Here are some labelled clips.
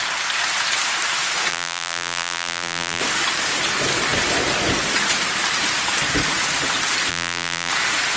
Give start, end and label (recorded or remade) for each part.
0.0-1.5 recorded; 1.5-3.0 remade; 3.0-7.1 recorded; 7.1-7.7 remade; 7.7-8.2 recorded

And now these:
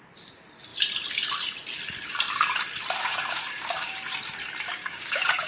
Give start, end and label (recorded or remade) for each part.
0.0-3.0 recorded; 3.0-3.9 remade; 3.9-4.8 recorded; 4.8-5.5 remade

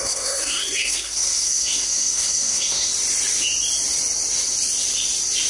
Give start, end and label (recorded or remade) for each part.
0.0-2.9 remade; 2.9-5.5 recorded

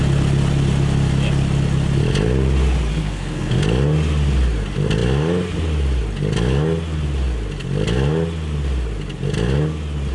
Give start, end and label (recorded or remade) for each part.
0.0-2.9 recorded; 2.9-3.6 remade; 3.6-10.1 recorded

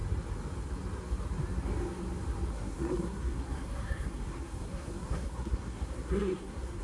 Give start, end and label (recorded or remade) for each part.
0.0-2.5 recorded; 2.5-6.8 remade

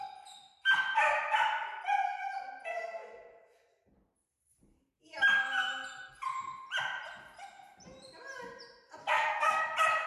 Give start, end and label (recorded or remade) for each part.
0.0-9.0 recorded; 9.0-9.6 remade; 9.6-10.1 recorded

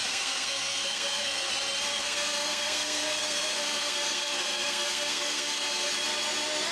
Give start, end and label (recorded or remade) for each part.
0.0-1.5 remade; 1.5-1.9 recorded; 1.9-5.9 remade; 5.9-6.7 recorded

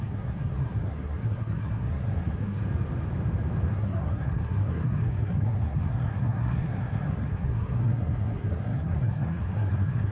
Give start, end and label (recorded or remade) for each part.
0.0-2.6 remade; 2.6-3.7 recorded; 3.7-10.1 remade